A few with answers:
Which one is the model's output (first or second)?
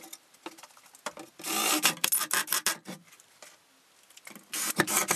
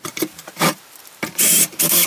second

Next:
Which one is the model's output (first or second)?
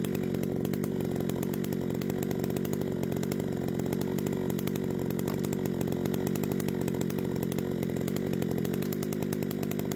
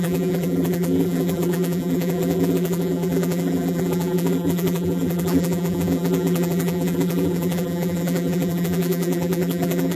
second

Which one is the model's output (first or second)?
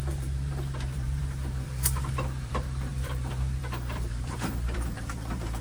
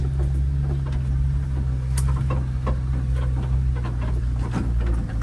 first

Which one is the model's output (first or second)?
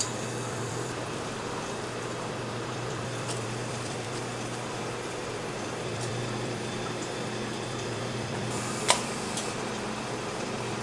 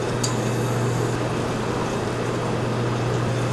first